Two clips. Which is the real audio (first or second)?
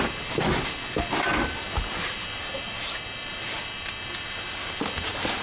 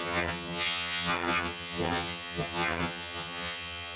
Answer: first